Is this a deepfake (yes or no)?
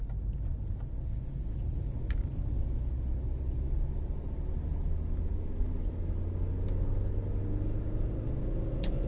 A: no